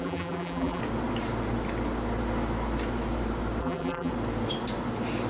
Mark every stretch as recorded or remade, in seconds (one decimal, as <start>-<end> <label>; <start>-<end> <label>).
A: 0.0-0.8 remade; 0.8-3.6 recorded; 3.6-4.1 remade; 4.1-5.3 recorded